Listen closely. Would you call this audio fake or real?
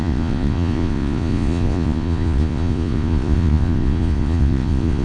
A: fake